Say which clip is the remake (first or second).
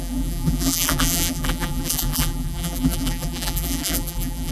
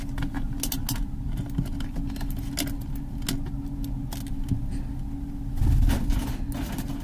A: first